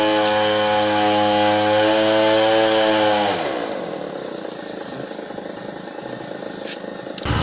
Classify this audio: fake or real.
real